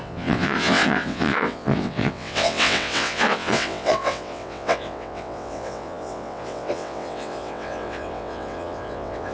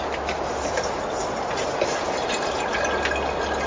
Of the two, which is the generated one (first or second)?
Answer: first